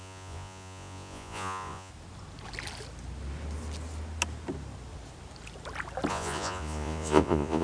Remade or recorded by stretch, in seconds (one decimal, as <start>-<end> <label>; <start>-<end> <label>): 0.0-1.9 remade; 1.9-6.1 recorded; 6.1-7.6 remade